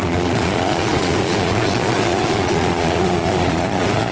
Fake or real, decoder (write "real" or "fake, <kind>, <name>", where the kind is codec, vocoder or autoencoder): fake, vocoder, Vocos